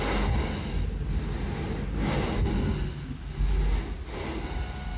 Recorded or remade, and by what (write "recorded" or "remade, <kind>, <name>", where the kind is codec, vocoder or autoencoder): recorded